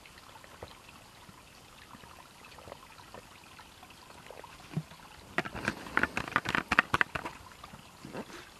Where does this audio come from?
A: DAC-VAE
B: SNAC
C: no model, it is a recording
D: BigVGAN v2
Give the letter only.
C